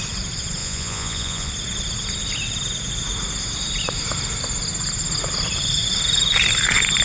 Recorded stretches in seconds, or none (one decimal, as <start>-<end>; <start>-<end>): 0.0-0.6; 1.5-7.0